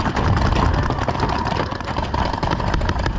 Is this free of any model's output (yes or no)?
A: yes